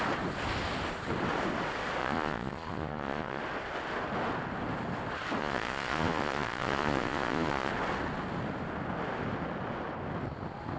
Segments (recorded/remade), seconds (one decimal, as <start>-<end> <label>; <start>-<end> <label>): 0.0-2.0 recorded; 2.0-3.4 remade; 3.4-5.4 recorded; 5.4-7.7 remade; 7.7-10.8 recorded